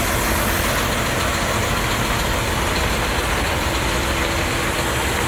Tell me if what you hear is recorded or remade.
recorded